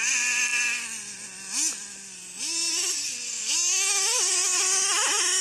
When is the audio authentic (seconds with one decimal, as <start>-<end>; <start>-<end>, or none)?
0.0-5.4